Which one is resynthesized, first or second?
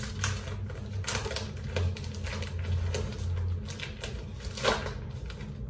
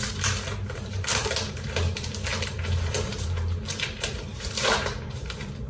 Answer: second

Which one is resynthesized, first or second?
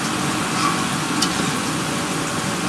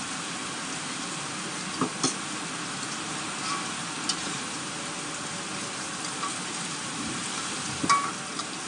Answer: first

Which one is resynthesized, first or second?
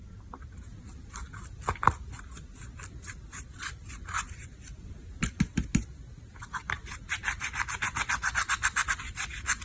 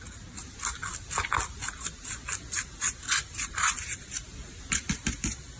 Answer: first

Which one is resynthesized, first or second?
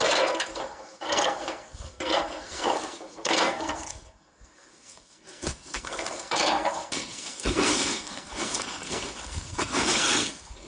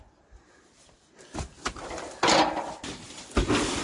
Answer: first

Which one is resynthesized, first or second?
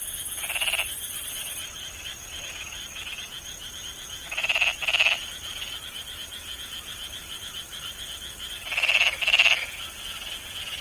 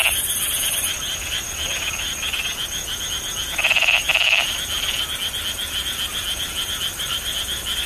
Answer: first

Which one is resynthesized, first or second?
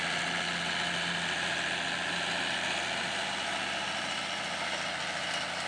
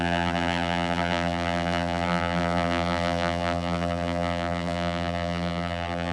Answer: second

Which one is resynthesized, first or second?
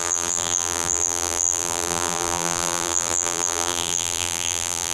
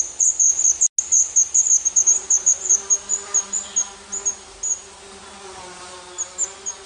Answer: first